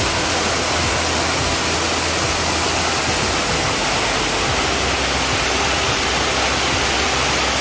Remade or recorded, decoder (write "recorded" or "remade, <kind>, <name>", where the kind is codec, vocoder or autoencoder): recorded